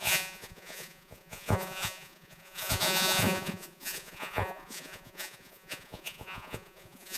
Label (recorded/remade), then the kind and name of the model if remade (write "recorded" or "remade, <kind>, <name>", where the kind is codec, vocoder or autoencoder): remade, vocoder, Vocos